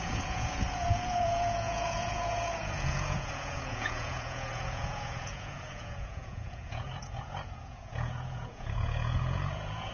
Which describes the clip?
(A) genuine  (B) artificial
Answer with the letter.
B